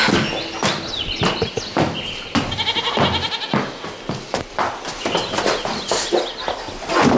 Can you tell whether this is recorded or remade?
recorded